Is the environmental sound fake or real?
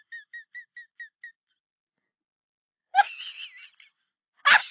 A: real